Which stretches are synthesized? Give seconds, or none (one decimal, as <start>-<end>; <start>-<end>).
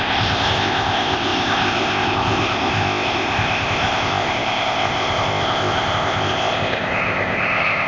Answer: 0.0-7.9